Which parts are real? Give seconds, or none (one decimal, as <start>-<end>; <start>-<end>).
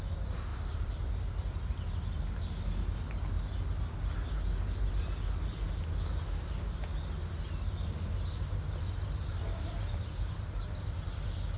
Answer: 0.0-0.5; 1.1-11.6